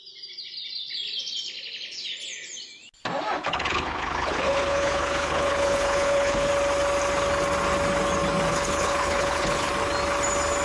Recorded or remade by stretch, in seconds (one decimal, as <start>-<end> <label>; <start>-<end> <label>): 0.0-3.4 recorded; 3.4-6.5 remade; 6.5-8.5 recorded; 8.5-9.7 remade; 9.7-10.6 recorded